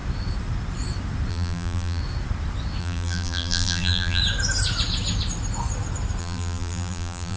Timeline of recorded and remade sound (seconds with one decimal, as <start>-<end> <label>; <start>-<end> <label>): 0.0-1.3 recorded; 1.3-2.0 remade; 2.0-2.8 recorded; 2.8-4.2 remade; 4.2-6.2 recorded; 6.2-7.4 remade